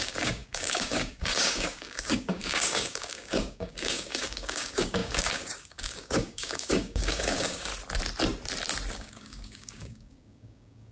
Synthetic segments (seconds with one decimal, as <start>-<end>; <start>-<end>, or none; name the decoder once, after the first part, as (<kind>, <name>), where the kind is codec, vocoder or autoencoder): 0.0-7.7 (codec, DAC); 8.9-10.9